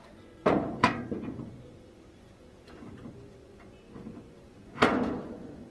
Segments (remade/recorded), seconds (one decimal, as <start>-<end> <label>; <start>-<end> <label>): 0.0-5.7 remade